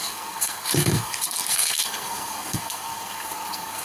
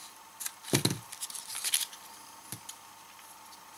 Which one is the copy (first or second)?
first